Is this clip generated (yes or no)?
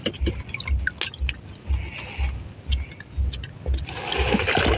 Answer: no